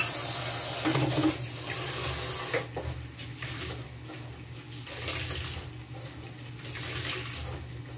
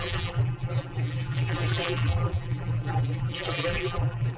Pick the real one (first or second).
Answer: first